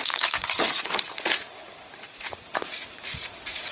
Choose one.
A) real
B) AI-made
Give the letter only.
B